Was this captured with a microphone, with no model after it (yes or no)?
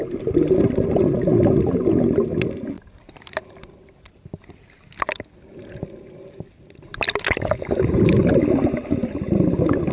yes